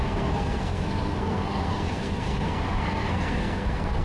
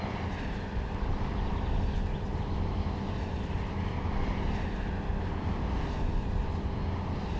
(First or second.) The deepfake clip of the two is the first